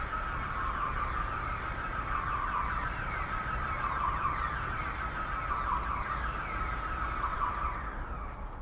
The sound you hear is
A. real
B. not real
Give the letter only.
A